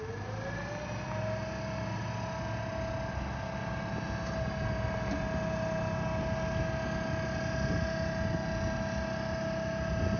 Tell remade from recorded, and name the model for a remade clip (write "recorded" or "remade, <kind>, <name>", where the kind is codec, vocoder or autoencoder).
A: recorded